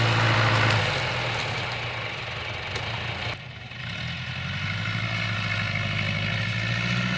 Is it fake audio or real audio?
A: real